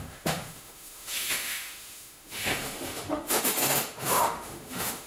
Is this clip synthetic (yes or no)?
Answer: yes